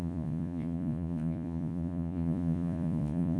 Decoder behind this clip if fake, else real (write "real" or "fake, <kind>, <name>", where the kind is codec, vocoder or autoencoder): fake, vocoder, Vocos